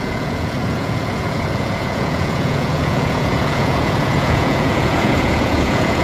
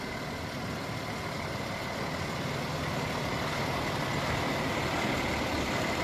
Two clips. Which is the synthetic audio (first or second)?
first